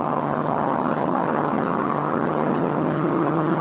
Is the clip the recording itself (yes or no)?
no